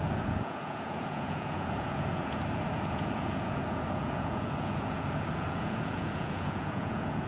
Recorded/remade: remade